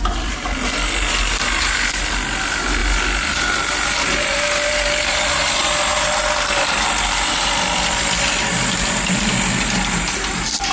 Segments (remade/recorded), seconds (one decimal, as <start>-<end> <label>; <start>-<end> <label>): 0.0-2.8 remade; 2.8-4.7 recorded; 4.7-5.9 remade; 5.9-7.4 recorded; 7.4-10.7 remade